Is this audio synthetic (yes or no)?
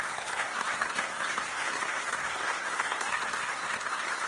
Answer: yes